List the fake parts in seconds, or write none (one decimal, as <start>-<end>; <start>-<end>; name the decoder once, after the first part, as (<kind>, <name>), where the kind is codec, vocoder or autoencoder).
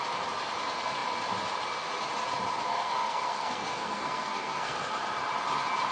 2.7-5.0 (codec, SNAC)